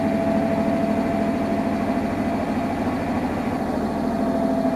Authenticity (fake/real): real